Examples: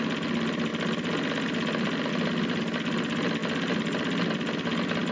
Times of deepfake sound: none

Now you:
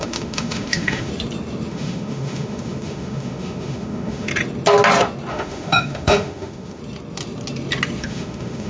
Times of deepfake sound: 0.0-1.1; 1.7-4.3; 5.3-6.8; 8.0-8.7